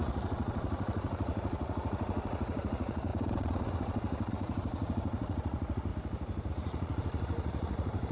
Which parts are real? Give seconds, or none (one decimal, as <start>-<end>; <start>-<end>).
5.9-6.5